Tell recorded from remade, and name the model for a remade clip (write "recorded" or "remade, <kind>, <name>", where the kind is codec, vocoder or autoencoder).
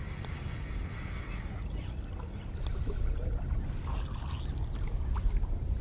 recorded